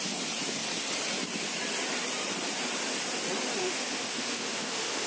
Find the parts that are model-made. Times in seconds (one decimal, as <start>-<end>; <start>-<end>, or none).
3.6-5.1